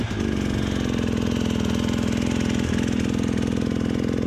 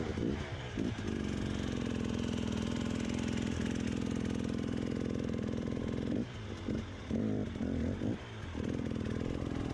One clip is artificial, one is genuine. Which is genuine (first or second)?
first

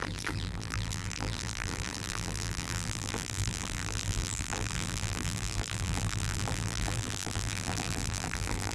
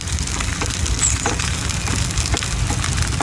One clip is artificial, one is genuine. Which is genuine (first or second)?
second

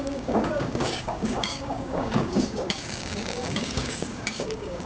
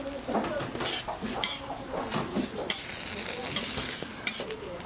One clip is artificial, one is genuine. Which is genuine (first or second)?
second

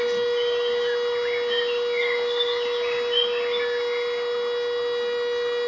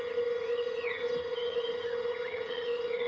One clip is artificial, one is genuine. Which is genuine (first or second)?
first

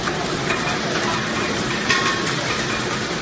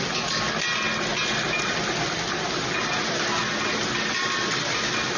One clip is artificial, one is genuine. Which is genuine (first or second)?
second